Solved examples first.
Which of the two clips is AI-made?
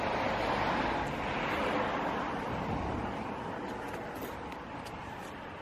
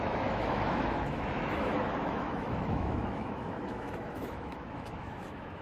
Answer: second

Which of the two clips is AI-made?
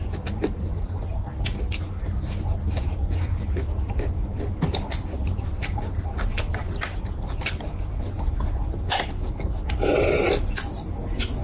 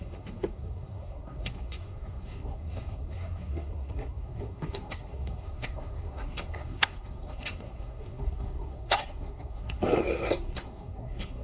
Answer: second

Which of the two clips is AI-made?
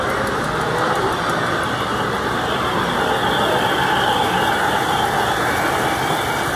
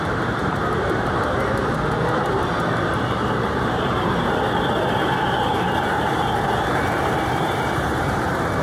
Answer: second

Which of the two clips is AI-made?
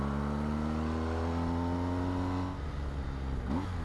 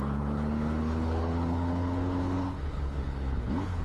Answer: second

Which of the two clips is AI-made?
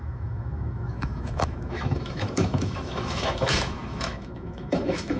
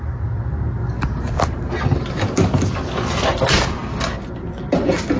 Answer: first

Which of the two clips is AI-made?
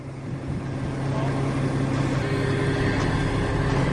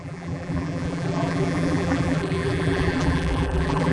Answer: second